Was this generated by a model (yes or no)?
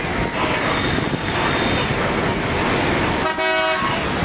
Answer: no